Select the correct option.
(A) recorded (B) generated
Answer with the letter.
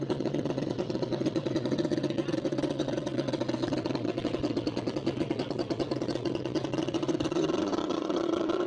B